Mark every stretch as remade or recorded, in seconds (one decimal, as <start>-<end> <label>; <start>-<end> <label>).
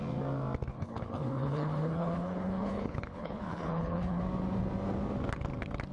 0.0-0.7 recorded; 0.7-4.2 remade; 4.2-5.9 recorded